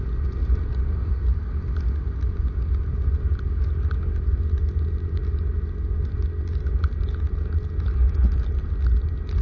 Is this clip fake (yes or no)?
no